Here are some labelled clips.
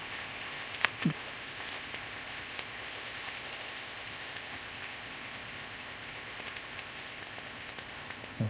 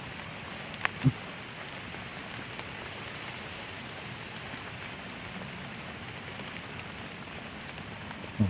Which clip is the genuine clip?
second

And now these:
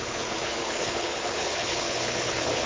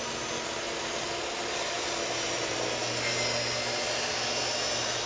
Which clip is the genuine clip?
second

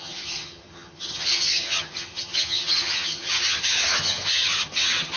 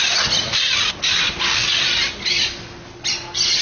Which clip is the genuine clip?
second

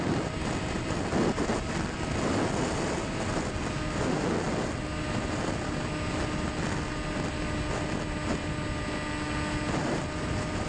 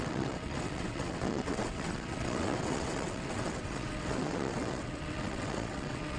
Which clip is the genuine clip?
first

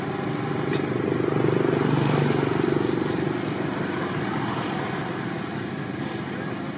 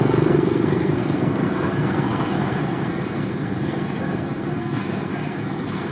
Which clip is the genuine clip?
first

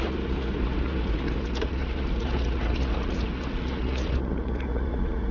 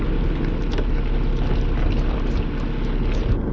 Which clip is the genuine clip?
second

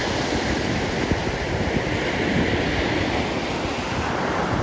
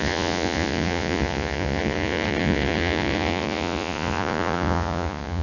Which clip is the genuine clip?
first